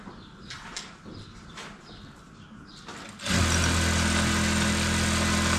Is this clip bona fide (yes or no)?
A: yes